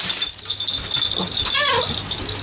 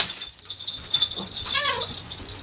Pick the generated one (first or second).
second